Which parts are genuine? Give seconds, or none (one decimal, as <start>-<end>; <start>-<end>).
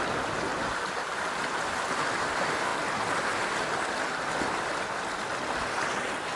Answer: 0.0-0.5; 1.3-6.4